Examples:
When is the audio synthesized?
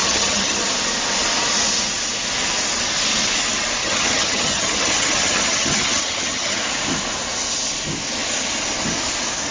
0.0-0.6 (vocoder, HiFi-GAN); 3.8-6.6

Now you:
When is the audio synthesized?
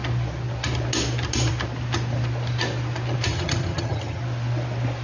3.3-4.2 (vocoder, HiFi-GAN)